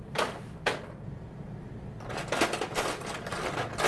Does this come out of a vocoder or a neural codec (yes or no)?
yes